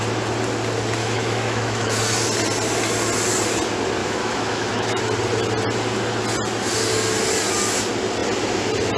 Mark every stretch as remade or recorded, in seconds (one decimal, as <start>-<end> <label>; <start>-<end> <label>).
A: 0.0-1.0 recorded; 1.0-2.0 remade; 2.0-4.0 recorded; 4.0-5.0 remade; 5.0-9.0 recorded